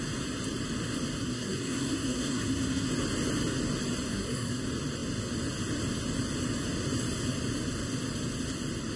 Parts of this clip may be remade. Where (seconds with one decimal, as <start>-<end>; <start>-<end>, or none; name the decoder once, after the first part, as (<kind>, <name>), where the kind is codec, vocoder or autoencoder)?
1.2-2.9 (codec, SNAC); 4.1-4.6